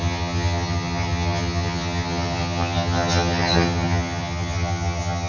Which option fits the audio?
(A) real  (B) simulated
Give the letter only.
B